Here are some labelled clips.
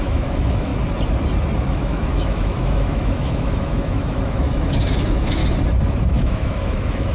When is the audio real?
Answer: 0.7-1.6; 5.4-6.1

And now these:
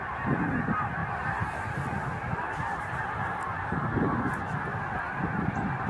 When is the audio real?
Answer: 0.0-1.0; 1.7-2.7; 3.6-5.9